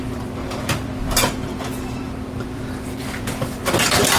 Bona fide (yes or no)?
no